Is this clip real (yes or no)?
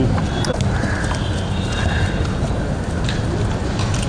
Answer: yes